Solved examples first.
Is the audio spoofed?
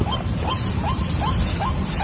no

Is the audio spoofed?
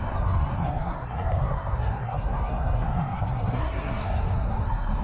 yes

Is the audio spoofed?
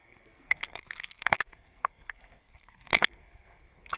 yes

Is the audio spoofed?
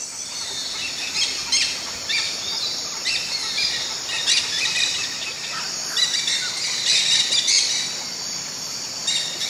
no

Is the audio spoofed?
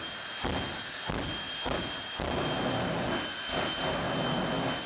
no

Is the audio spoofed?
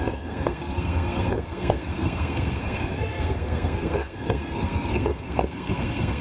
yes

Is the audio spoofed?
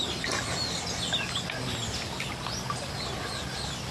no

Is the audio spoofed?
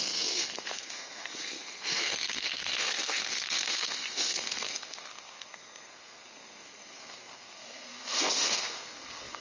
yes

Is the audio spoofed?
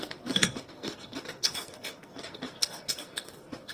yes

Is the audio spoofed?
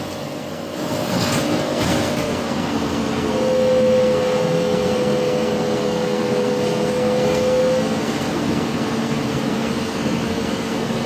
yes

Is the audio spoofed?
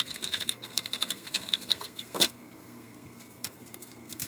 yes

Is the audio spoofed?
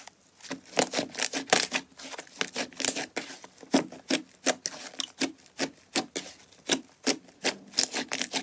no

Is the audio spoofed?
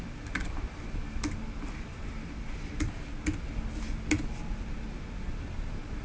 no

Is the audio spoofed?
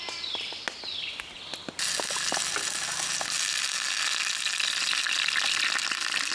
no